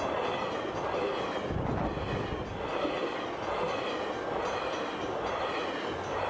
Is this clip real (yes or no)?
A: yes